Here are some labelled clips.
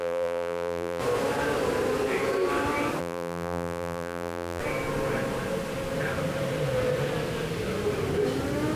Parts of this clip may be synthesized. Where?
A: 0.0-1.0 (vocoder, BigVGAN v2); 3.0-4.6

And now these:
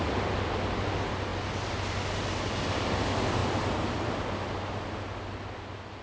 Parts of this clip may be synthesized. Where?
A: none

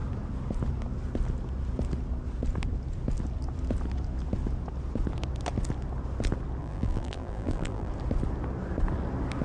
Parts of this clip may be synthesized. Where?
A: 6.6-7.9 (vocoder, BigVGAN v2)

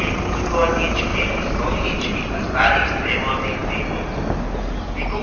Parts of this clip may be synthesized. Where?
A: 1.1-3.1 (vocoder, BigVGAN v2)

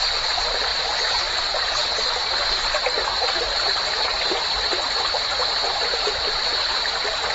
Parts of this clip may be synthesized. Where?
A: 4.1-5.2 (vocoder, BigVGAN v2)